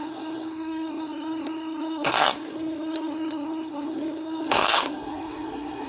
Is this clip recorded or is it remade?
remade